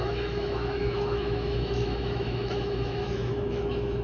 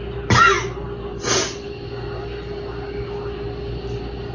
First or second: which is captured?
second